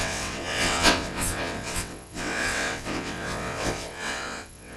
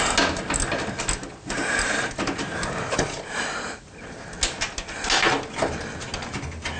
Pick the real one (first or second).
second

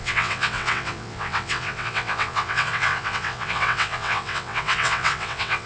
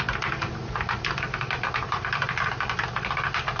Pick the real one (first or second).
second